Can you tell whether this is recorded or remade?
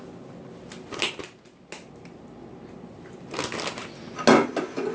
recorded